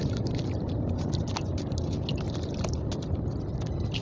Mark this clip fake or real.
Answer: real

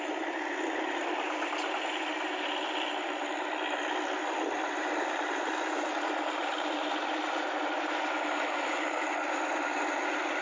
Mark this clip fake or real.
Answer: real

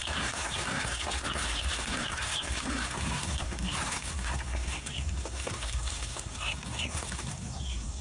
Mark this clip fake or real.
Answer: fake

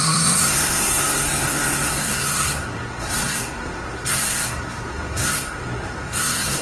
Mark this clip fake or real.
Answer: fake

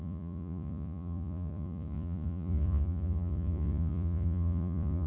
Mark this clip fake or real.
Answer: fake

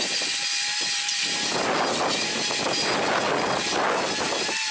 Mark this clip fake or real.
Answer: real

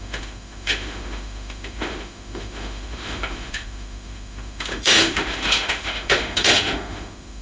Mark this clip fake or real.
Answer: fake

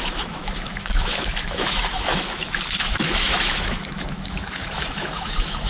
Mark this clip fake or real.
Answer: fake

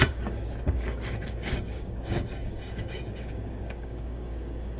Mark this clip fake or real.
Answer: fake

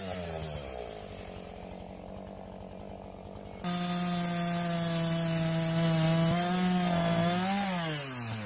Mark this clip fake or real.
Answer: real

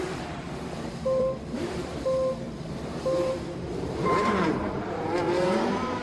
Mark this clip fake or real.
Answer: fake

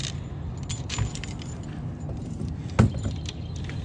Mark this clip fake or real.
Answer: real